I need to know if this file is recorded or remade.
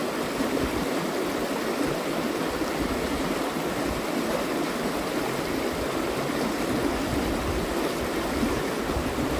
recorded